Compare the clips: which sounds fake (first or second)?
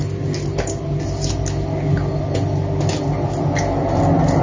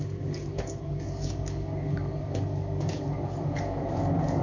second